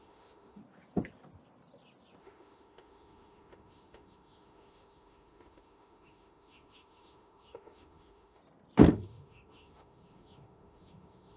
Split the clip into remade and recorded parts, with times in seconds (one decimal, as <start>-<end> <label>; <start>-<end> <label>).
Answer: 0.0-0.6 remade; 0.6-2.2 recorded; 2.2-8.4 remade; 8.4-8.9 recorded; 8.9-11.4 remade